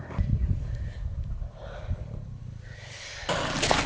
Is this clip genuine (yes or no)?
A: yes